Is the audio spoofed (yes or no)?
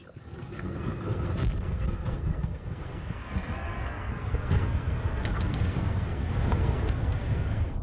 yes